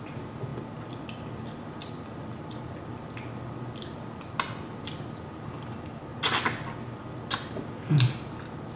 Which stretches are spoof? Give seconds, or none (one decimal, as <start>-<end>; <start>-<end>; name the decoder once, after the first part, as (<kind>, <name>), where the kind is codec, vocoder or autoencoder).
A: none